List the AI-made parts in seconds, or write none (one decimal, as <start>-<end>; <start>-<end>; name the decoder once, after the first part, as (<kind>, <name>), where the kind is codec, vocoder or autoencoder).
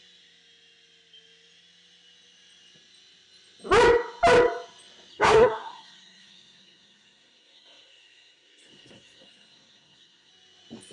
5.1-10.3 (codec, SNAC)